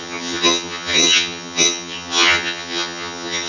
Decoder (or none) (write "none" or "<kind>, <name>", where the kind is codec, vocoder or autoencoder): vocoder, HiFi-GAN